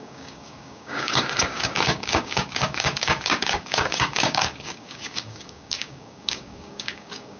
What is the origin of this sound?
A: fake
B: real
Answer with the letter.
A